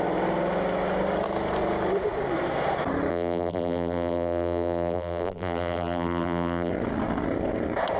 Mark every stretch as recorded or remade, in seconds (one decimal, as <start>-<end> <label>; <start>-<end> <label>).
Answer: 0.0-3.1 recorded; 3.1-6.7 remade; 6.7-8.0 recorded